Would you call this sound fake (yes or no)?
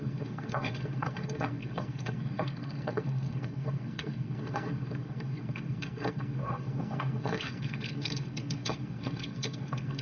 yes